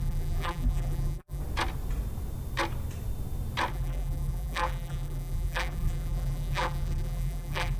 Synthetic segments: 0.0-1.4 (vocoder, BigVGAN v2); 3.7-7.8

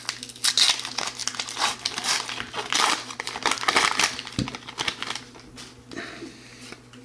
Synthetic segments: none

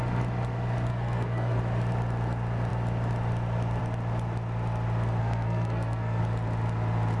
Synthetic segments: 0.9-1.6 (codec, SNAC); 5.2-6.2

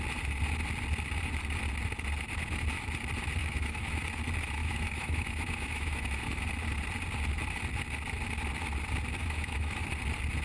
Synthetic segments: 3.4-3.9 (autoencoder, DAC-VAE); 4.6-6.4; 9.2-9.9

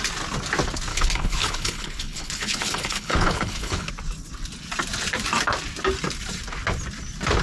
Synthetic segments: 0.9-3.9 (codec, HILCodec)